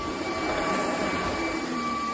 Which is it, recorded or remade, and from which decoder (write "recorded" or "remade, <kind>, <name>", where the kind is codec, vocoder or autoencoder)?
remade, vocoder, BigVGAN v2